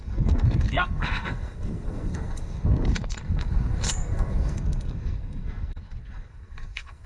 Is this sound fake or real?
fake